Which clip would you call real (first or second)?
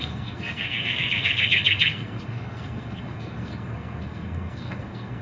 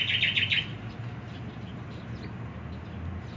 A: second